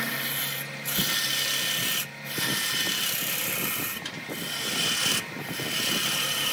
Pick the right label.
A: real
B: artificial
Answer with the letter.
A